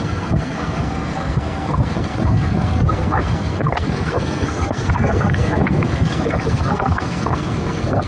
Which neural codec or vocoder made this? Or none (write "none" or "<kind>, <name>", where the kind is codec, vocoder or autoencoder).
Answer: codec, SNAC